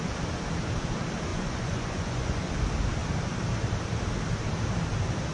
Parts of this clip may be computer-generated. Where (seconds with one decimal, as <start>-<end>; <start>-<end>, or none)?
1.3-2.5